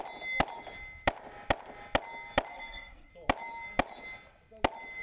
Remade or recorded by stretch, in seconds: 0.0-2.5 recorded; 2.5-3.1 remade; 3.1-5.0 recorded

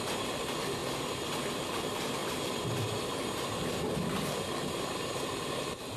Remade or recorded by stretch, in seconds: 0.0-6.0 recorded

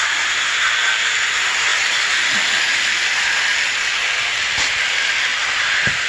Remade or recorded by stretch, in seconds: 0.0-6.1 recorded